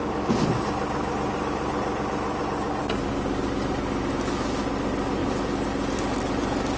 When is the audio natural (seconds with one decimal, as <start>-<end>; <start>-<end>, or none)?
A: 0.0-6.8